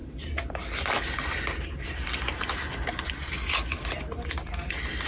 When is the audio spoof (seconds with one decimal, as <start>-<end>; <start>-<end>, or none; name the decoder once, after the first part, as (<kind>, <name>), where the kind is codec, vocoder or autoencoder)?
none